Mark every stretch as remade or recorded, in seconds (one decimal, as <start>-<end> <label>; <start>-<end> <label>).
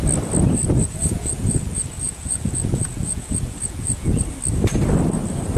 0.0-0.8 recorded; 0.8-4.2 remade; 4.2-5.6 recorded